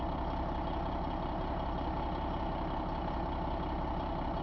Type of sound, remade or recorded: recorded